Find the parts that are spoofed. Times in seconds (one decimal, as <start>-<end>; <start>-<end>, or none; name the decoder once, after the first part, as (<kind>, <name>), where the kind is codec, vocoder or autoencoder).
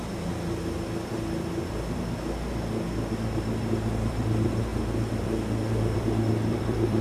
3.6-4.7 (vocoder, BigVGAN v2); 5.7-7.0